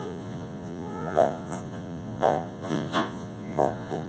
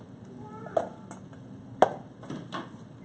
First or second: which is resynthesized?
first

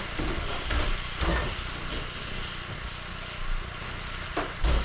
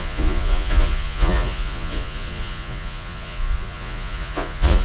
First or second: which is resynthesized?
second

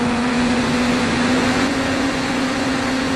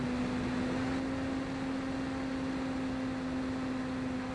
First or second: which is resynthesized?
first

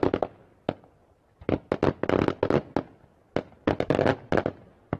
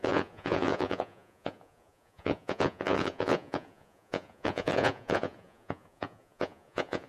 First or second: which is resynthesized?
second